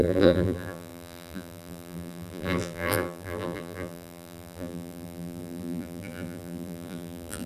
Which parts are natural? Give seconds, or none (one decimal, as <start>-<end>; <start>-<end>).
none